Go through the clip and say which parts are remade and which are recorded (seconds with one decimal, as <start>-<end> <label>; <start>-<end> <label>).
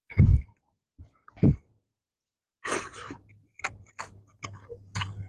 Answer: 0.0-0.9 remade; 0.9-1.5 recorded; 1.5-2.1 remade; 2.1-3.9 recorded; 3.9-5.3 remade